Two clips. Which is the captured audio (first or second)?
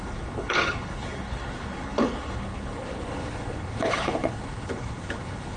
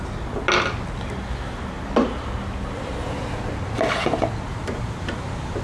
second